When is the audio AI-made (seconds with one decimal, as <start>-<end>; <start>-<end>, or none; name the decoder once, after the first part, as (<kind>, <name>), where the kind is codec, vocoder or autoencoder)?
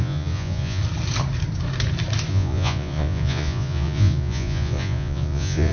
0.0-0.8 (vocoder, Vocos); 2.3-5.7